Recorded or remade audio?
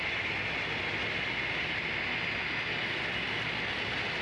recorded